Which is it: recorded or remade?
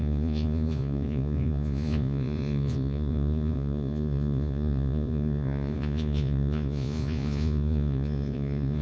remade